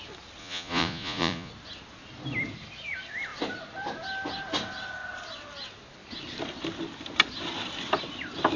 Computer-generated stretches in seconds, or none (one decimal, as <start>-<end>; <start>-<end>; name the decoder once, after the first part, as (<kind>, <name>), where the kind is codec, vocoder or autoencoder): 0.4-1.5 (vocoder, Vocos)